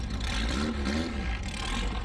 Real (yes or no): no